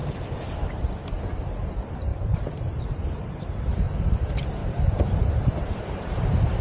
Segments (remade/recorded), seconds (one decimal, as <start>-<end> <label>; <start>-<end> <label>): 0.0-0.7 recorded; 0.7-6.6 remade

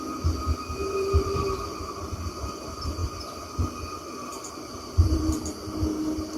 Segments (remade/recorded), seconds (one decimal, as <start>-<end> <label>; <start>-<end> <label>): 0.0-0.8 recorded; 0.8-1.9 remade; 1.9-4.3 recorded; 4.3-5.3 remade; 5.3-6.4 recorded

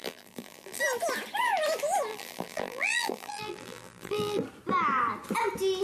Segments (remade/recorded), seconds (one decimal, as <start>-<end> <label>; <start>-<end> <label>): 0.0-0.8 remade; 0.8-2.1 recorded; 2.1-4.4 remade; 4.4-5.8 recorded

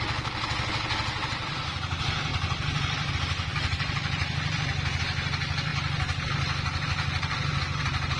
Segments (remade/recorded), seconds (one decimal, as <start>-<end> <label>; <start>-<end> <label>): 0.0-2.3 recorded; 2.3-3.1 remade; 3.1-3.5 recorded; 3.5-5.0 remade; 5.0-8.2 recorded

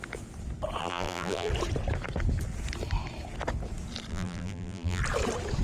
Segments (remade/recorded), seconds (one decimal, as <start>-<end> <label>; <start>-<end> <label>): 0.0-0.8 recorded; 0.8-1.5 remade; 1.5-4.1 recorded; 4.1-5.0 remade; 5.0-5.6 recorded

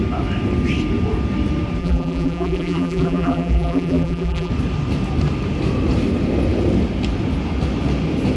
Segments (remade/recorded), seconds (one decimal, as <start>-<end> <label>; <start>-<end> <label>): 0.0-1.8 recorded; 1.8-4.5 remade; 4.5-8.4 recorded

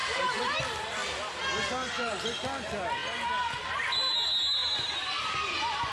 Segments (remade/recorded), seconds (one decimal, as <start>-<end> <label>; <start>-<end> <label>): 0.0-0.6 remade; 0.6-4.6 recorded; 4.6-5.4 remade; 5.4-5.9 recorded